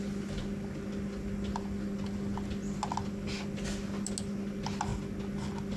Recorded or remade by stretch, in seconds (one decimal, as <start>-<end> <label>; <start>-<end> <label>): 0.0-5.8 recorded